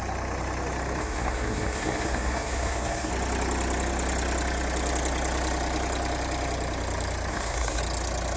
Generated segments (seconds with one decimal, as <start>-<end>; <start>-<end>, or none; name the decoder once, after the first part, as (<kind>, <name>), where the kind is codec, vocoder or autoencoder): 1.0-3.1 (codec, SNAC); 7.3-7.8